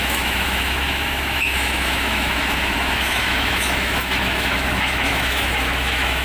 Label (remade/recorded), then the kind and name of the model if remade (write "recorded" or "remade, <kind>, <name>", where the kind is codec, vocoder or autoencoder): remade, autoencoder, DAC-VAE